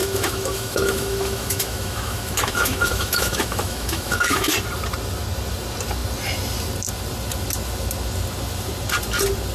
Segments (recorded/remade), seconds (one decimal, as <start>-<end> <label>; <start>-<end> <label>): 0.0-4.5 remade; 4.5-9.5 recorded